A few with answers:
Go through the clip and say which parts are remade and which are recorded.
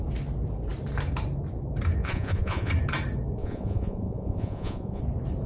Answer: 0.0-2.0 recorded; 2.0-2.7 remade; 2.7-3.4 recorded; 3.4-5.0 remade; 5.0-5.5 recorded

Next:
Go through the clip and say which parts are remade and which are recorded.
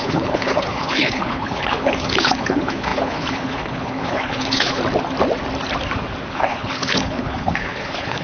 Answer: 0.0-4.8 remade; 4.8-6.3 recorded; 6.3-8.2 remade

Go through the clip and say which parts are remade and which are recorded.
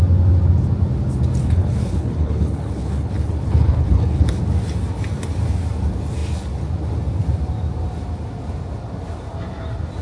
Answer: 0.0-1.4 recorded; 1.4-4.4 remade; 4.4-10.0 recorded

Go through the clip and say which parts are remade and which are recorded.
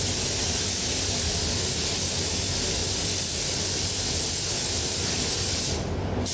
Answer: 0.0-6.3 recorded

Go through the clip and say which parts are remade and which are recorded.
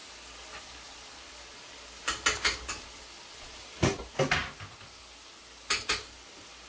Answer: 0.0-1.3 recorded; 1.3-4.4 remade; 4.4-5.8 recorded; 5.8-6.7 remade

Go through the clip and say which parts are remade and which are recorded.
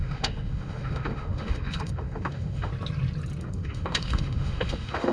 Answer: 0.0-2.7 remade; 2.7-3.4 recorded; 3.4-5.1 remade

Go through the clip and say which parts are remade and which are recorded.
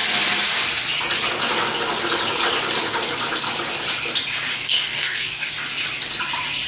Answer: 0.0-4.5 recorded; 4.5-5.5 remade; 5.5-6.7 recorded